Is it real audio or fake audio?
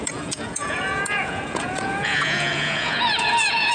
fake